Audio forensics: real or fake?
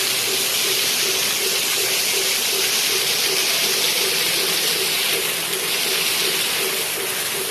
fake